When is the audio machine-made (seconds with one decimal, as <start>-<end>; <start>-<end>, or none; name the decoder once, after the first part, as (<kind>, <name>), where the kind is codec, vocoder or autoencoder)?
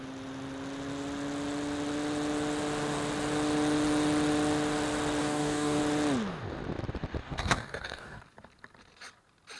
5.2-5.8 (codec, DAC); 7.2-8.2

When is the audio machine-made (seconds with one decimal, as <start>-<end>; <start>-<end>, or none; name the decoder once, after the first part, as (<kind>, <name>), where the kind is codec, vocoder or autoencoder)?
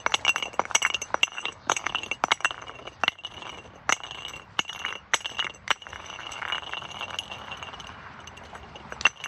1.3-2.0 (codec, DAC); 5.9-6.5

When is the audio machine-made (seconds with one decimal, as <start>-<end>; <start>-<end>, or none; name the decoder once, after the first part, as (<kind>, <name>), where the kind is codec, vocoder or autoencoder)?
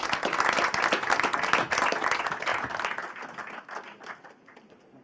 none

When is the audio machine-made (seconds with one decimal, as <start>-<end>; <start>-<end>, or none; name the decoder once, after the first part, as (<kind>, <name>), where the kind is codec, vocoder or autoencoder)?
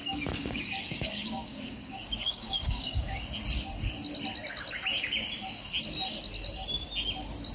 0.0-3.2 (codec, DAC)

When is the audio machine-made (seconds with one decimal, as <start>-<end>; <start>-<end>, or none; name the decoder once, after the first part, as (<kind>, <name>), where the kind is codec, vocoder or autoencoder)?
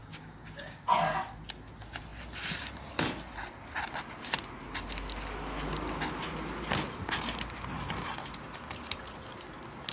0.0-0.8 (codec, DAC)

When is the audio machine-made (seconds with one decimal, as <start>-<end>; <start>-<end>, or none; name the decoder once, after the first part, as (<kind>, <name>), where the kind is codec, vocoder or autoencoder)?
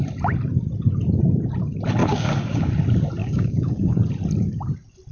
2.0-2.7 (codec, DAC); 3.2-4.0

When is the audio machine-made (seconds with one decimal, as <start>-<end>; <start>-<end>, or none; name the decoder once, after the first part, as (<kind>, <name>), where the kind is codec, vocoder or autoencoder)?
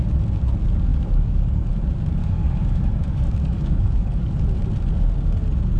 0.9-1.7 (codec, DAC); 2.2-4.4